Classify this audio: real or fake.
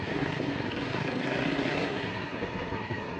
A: fake